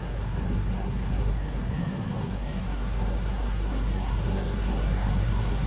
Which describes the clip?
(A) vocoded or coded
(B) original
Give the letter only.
A